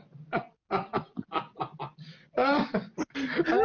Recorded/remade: recorded